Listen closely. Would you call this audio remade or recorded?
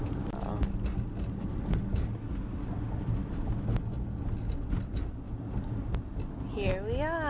recorded